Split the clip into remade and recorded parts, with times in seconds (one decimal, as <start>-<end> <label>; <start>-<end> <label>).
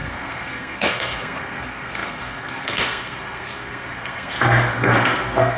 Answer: 0.0-5.6 remade